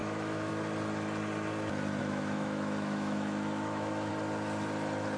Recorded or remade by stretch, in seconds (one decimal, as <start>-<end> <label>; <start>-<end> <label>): 0.0-0.5 remade; 0.5-2.0 recorded; 2.0-4.1 remade; 4.1-5.2 recorded